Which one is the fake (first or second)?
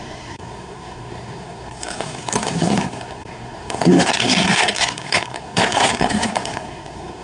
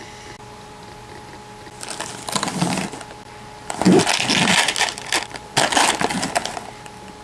first